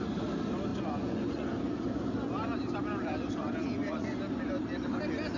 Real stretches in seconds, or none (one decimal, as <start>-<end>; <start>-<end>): 0.0-0.7; 1.8-3.4; 4.2-5.4